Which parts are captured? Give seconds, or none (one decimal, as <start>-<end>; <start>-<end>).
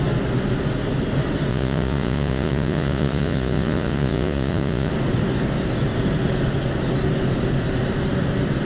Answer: 0.0-1.5; 4.9-8.6